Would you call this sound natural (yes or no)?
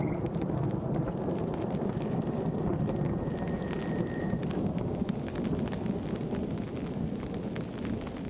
yes